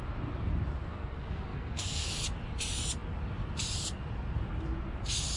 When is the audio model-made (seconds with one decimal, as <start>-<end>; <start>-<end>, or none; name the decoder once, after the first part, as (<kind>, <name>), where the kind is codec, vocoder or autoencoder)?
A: 0.9-2.1 (codec, SNAC)